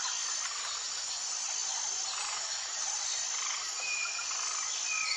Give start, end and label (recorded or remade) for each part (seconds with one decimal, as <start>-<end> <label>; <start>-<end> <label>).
0.0-5.2 recorded